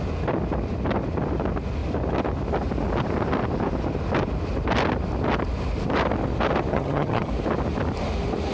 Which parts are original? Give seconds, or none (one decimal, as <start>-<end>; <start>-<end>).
0.0-6.7; 7.3-8.5